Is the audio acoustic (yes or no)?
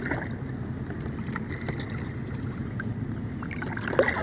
yes